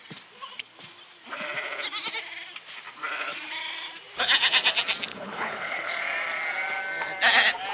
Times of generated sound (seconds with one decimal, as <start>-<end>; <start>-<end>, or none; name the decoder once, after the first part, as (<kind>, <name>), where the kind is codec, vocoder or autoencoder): 5.1-5.9 (codec, HILCodec)